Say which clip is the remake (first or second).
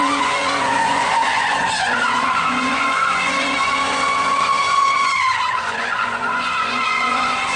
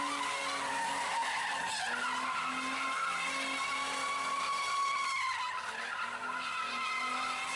first